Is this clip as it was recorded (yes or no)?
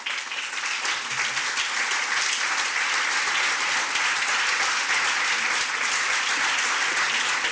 yes